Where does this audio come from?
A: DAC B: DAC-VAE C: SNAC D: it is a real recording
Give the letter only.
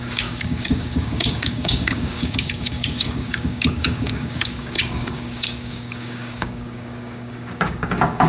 A